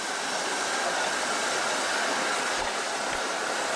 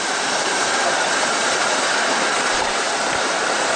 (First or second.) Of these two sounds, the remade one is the second